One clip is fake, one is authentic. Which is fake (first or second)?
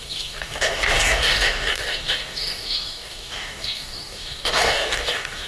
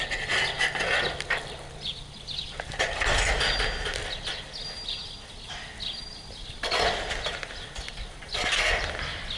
first